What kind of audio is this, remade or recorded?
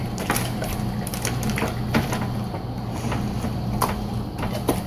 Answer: recorded